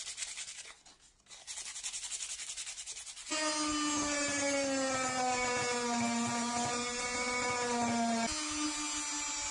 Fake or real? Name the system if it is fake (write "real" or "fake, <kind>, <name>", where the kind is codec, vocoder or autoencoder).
real